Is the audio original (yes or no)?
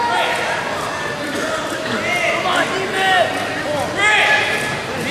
yes